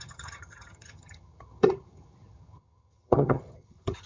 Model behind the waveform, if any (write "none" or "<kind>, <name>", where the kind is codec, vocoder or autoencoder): vocoder, HiFi-GAN